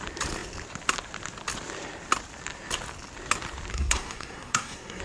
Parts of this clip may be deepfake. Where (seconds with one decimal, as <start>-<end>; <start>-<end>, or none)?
3.7-5.0